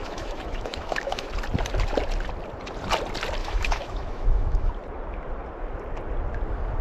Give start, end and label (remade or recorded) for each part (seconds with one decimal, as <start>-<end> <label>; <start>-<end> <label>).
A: 0.0-1.3 remade; 1.3-3.4 recorded; 3.4-4.7 remade; 4.7-6.8 recorded